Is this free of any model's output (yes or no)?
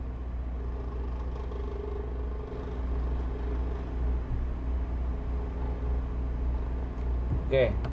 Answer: yes